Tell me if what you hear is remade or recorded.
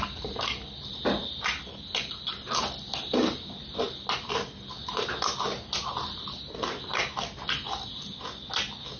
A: recorded